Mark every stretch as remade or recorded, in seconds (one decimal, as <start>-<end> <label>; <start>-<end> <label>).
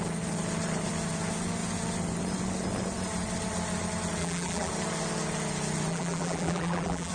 0.0-4.2 recorded; 4.2-4.7 remade; 4.7-5.9 recorded; 5.9-7.1 remade